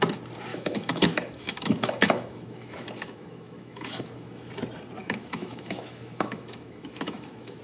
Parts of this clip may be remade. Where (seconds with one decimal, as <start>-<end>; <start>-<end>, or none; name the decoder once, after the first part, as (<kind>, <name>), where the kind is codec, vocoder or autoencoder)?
0.5-4.5 (autoencoder, DAC-VAE); 5.0-7.6